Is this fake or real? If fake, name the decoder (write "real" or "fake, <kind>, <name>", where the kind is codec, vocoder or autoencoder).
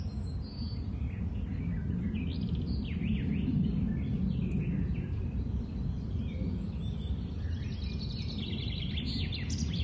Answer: real